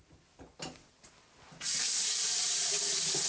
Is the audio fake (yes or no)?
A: no